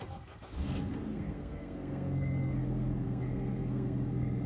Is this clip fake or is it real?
fake